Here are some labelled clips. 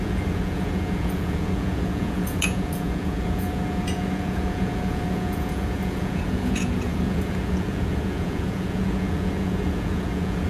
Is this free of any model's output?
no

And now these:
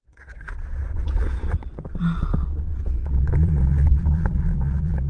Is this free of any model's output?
no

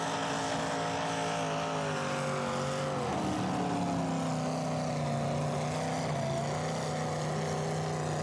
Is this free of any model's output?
yes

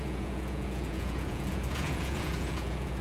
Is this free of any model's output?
no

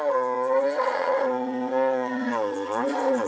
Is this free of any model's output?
no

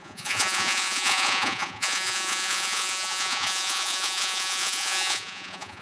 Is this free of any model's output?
no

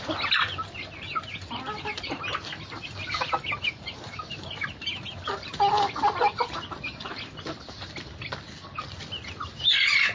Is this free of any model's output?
yes